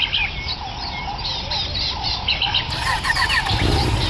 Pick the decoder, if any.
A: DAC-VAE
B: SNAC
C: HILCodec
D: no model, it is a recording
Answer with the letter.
D